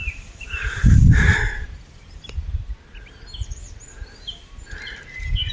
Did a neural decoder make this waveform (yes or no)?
no